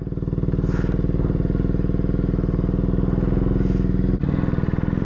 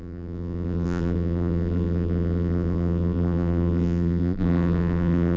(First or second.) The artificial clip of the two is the second